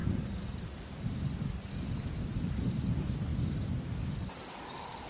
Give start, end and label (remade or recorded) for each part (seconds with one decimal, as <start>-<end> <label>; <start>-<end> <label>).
0.0-2.7 recorded; 2.7-3.3 remade; 3.3-5.1 recorded